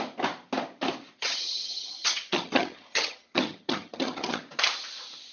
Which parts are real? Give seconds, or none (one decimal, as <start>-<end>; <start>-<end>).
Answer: 0.0-1.2; 4.4-5.3